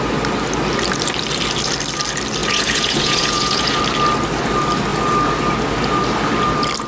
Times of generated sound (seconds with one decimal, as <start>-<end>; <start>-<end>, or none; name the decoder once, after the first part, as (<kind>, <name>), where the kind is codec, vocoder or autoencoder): 2.4-3.8 (vocoder, Vocos)